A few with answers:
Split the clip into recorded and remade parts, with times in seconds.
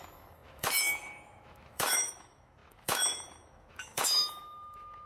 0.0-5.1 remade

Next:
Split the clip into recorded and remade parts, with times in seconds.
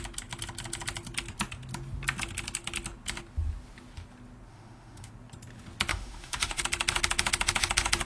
0.0-4.5 recorded; 4.5-5.1 remade; 5.1-5.9 recorded; 5.9-6.6 remade; 6.6-8.0 recorded